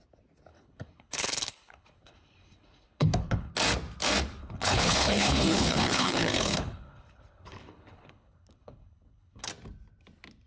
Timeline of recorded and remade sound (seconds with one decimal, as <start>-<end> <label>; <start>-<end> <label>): 0.0-0.5 recorded; 0.5-3.5 remade; 3.5-4.4 recorded; 4.4-9.5 remade; 9.5-10.5 recorded